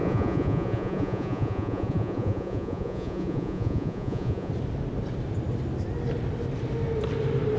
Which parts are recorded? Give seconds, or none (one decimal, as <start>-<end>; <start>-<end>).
4.5-7.6